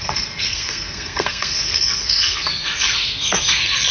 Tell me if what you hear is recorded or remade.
remade